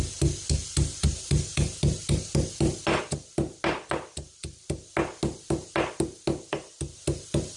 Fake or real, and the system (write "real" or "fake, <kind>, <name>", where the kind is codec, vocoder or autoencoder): real